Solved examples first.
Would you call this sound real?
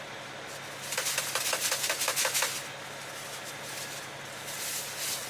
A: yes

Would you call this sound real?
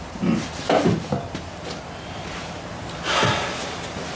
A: yes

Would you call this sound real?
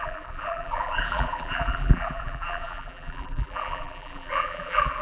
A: no